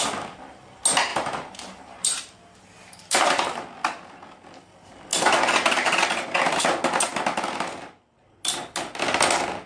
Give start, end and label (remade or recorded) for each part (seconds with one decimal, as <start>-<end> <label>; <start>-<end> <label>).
0.0-1.1 recorded; 1.1-3.6 remade; 3.6-5.1 recorded; 5.1-6.6 remade; 6.6-9.7 recorded